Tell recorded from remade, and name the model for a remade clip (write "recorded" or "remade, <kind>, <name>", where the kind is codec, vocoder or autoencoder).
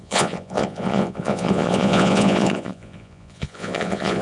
remade, vocoder, Vocos